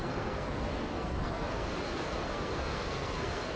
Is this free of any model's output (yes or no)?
no